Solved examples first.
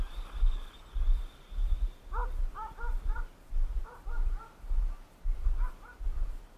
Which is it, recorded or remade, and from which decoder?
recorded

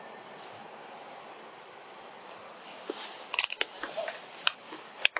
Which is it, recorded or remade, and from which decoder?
recorded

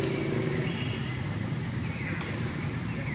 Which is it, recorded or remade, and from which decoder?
recorded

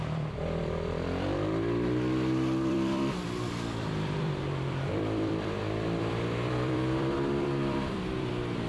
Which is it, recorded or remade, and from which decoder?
remade, vocoder, BigVGAN v2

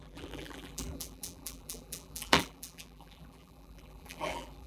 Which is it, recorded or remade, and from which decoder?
remade, vocoder, BigVGAN v2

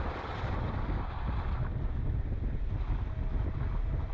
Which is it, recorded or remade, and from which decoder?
recorded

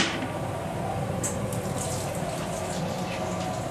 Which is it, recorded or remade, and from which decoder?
recorded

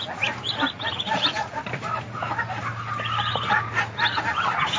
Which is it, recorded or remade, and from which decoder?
recorded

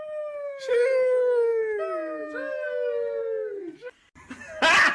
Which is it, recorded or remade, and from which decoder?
recorded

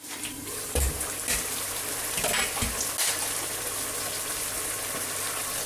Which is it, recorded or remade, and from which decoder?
recorded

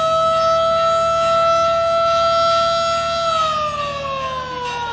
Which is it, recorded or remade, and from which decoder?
recorded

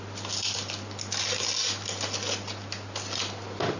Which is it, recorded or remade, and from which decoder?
recorded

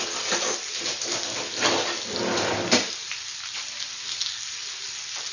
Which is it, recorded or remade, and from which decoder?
recorded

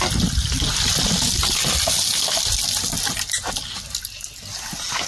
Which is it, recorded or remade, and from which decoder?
recorded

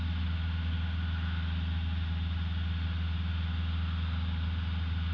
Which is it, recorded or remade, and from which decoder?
recorded